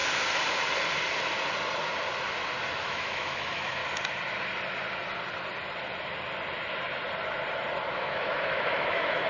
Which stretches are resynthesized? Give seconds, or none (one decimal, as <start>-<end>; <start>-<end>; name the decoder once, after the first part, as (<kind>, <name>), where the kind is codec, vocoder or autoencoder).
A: 2.8-3.8 (autoencoder, DAC-VAE); 7.9-9.3